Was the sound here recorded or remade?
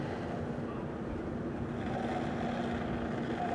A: recorded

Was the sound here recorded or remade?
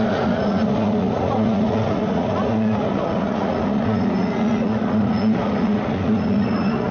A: remade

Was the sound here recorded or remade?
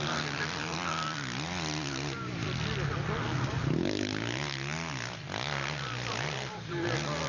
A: recorded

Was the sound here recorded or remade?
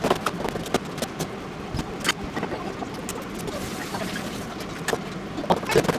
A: recorded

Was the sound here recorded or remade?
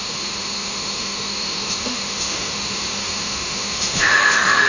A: remade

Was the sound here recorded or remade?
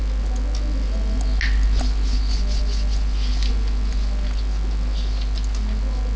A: recorded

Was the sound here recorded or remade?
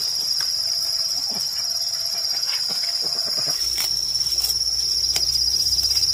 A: recorded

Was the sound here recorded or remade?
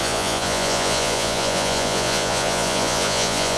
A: remade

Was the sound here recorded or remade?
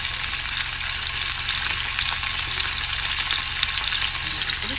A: recorded